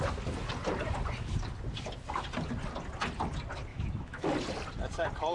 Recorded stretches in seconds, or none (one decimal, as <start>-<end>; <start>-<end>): 0.0-3.7; 4.3-5.3